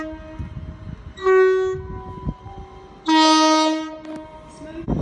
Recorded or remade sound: recorded